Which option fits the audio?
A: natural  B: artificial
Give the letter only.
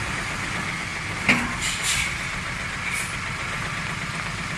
A